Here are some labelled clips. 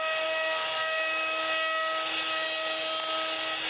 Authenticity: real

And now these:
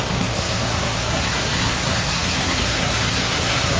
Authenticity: fake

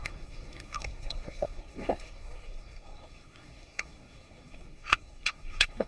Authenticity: fake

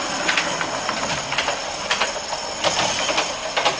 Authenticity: real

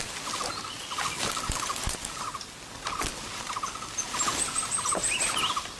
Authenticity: real